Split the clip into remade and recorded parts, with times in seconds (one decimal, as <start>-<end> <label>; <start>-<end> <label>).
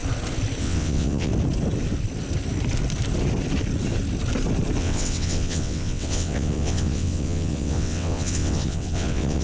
0.0-0.6 recorded; 0.6-1.3 remade; 1.3-4.8 recorded; 4.8-9.4 remade